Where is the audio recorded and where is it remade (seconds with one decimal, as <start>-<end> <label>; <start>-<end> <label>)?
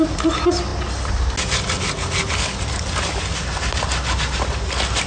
0.0-5.1 recorded